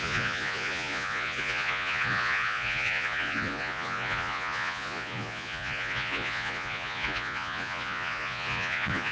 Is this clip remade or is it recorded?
remade